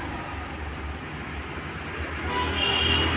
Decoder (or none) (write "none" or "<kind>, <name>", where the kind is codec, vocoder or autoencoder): none